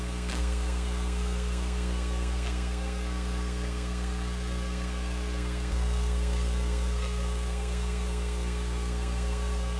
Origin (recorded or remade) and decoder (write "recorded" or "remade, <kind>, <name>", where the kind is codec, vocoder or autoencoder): remade, codec, SNAC